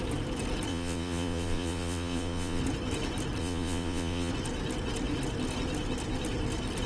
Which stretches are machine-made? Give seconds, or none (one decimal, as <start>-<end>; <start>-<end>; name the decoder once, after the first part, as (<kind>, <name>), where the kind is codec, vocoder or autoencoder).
0.7-2.6 (vocoder, Vocos); 3.4-4.3